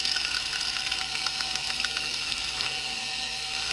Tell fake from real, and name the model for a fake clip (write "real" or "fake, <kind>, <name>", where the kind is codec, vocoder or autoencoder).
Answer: fake, codec, SNAC